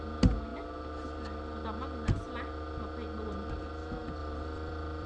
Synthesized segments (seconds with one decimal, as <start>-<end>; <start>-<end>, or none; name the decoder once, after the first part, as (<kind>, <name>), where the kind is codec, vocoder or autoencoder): 4.2-5.1 (vocoder, BigVGAN v2)